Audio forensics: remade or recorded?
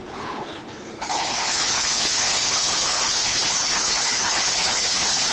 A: remade